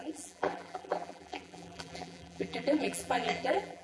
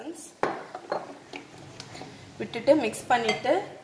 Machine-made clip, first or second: first